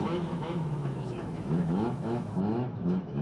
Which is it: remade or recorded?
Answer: remade